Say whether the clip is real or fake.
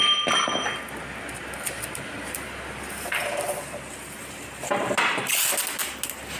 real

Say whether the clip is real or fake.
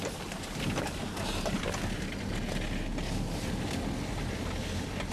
real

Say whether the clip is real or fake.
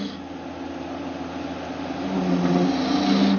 real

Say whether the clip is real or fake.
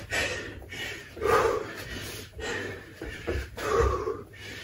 fake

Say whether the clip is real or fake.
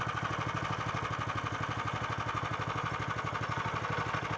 real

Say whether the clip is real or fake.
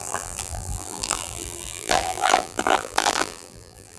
fake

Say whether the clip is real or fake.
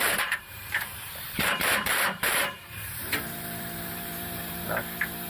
fake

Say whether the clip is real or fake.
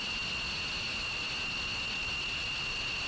real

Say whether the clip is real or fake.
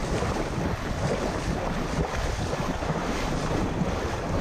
real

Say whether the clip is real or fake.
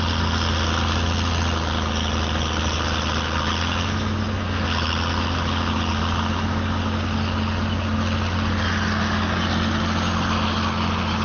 real